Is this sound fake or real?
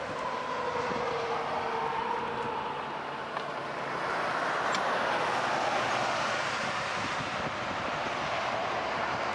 real